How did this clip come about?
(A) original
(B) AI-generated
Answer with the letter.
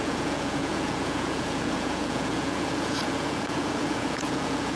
B